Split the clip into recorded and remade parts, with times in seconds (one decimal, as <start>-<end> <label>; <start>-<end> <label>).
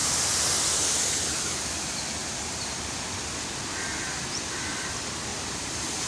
0.0-2.2 recorded; 2.2-2.8 remade; 2.8-5.3 recorded; 5.3-6.1 remade